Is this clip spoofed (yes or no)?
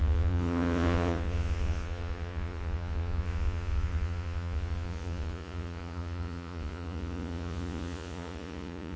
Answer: yes